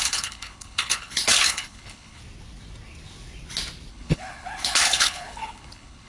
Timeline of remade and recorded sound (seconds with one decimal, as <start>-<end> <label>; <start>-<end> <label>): 0.0-2.2 remade; 2.2-3.9 recorded; 3.9-6.1 remade